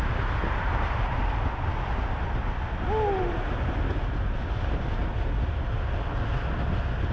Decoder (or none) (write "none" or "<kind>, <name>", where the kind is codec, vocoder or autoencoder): none